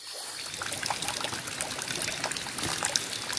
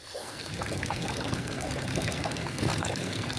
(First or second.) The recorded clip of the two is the first